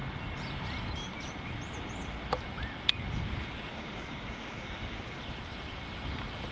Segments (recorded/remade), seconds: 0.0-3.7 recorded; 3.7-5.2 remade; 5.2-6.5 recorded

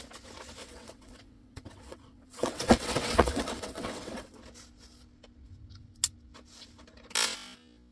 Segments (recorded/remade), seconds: 0.0-0.6 recorded; 0.6-4.4 remade; 4.4-7.9 recorded

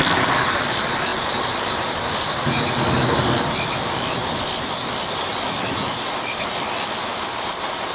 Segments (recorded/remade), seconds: 0.0-7.9 recorded

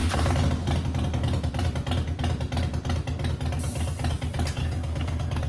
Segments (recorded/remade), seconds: 0.0-4.6 recorded; 4.6-5.5 remade